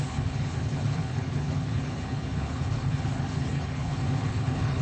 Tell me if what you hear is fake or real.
fake